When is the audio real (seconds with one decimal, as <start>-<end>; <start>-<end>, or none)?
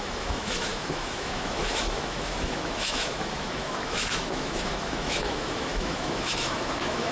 none